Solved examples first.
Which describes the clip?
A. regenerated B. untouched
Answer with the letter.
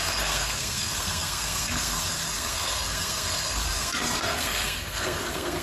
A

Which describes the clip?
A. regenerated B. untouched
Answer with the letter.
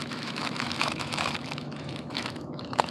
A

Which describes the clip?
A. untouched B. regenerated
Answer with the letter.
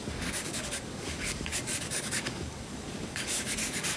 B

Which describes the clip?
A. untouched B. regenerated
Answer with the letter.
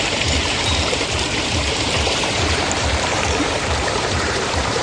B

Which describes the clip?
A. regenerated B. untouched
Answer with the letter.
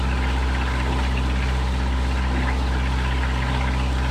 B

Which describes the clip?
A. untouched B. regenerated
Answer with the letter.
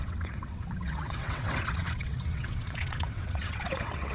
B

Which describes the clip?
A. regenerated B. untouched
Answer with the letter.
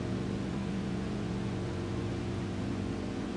A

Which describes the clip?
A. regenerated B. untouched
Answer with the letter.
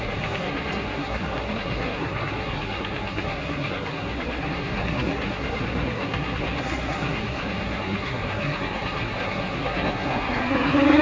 A